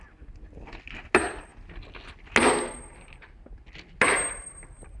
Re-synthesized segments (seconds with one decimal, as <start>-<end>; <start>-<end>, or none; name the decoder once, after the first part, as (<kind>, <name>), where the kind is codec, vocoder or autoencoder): none